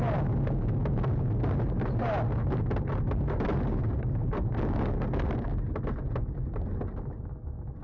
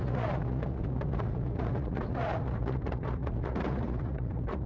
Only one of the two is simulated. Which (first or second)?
second